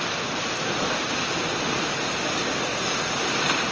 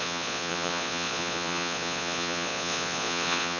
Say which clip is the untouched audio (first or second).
first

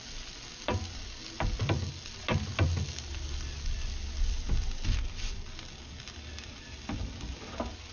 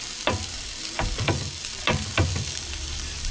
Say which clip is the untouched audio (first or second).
first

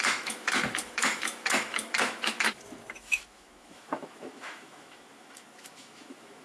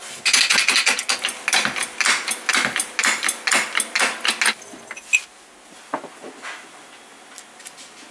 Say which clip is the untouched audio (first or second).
second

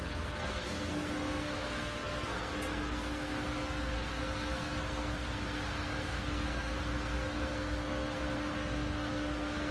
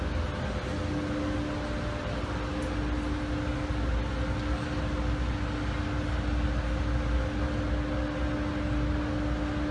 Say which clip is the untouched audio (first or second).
second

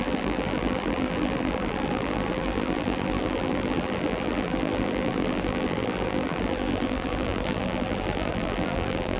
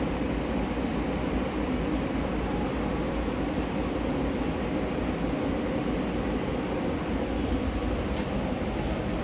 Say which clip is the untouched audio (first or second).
second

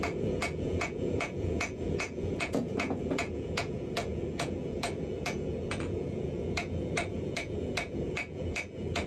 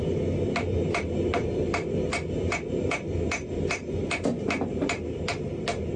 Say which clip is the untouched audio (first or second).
second